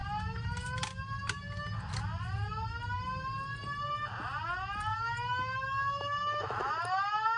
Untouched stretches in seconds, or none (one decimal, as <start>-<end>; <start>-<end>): 0.0-4.9; 6.7-7.4